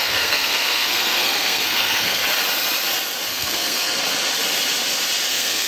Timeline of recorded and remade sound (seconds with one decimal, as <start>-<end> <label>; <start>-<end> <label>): 0.0-2.2 remade; 2.2-3.3 recorded; 3.3-4.0 remade; 4.0-5.3 recorded; 5.3-5.7 remade